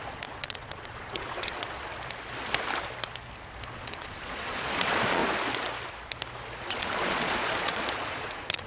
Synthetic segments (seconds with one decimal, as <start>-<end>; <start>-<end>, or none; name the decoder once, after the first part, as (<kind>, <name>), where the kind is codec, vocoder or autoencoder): 0.0-1.9 (vocoder, Vocos); 3.7-5.2; 6.6-8.7